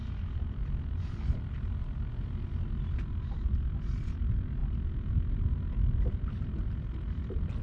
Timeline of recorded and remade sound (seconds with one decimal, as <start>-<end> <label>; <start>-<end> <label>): 0.0-7.6 recorded